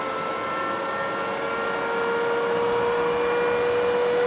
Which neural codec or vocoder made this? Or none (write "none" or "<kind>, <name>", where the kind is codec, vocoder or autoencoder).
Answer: none